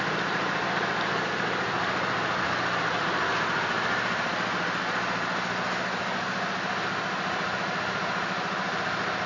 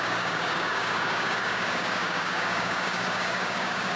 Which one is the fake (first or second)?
second